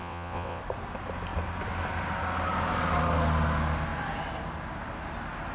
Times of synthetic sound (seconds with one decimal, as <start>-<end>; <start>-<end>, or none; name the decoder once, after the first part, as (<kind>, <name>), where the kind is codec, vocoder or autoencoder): 0.0-0.6 (vocoder, WaveNeXt)